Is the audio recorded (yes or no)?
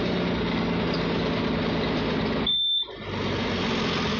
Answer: yes